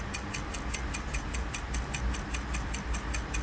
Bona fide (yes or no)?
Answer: yes